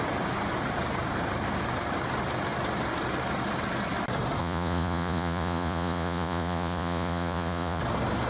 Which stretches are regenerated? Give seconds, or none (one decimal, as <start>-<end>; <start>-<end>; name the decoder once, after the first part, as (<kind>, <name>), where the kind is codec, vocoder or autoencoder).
4.4-7.8 (vocoder, Vocos)